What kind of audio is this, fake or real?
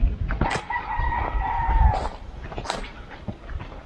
real